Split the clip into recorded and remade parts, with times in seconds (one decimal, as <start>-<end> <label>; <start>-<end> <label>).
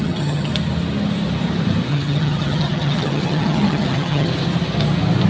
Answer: 0.0-0.5 remade; 0.5-1.9 recorded; 1.9-4.3 remade; 4.3-5.3 recorded